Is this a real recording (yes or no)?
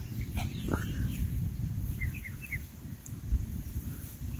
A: no